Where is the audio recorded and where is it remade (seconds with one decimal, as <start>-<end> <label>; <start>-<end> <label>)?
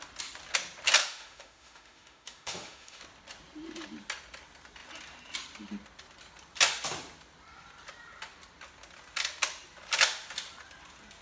0.0-1.0 recorded; 1.0-3.0 remade; 3.0-11.2 recorded